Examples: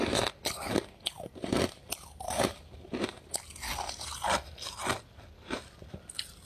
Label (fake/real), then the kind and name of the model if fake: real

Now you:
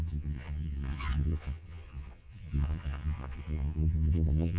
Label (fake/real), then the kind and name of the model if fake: fake, vocoder, Vocos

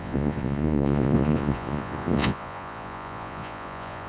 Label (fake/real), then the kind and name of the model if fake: fake, vocoder, Vocos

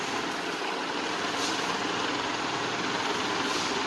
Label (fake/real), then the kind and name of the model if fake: real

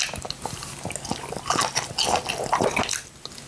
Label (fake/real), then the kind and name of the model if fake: real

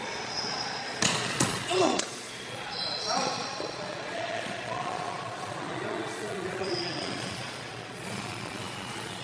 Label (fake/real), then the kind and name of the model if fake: fake, vocoder, Vocos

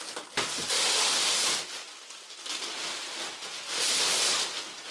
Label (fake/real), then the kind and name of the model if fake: real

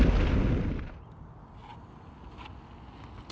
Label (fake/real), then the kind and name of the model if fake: real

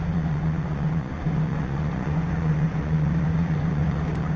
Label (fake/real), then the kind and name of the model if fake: fake, vocoder, Vocos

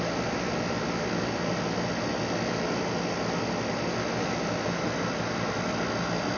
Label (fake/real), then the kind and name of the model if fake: real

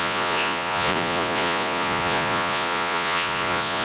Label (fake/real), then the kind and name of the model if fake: fake, vocoder, Vocos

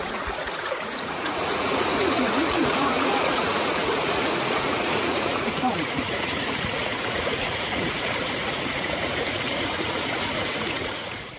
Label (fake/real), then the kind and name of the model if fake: fake, vocoder, Vocos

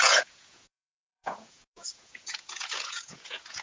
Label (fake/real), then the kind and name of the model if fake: fake, vocoder, Vocos